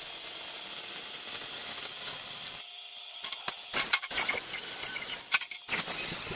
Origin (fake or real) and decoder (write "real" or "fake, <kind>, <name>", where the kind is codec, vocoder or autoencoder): real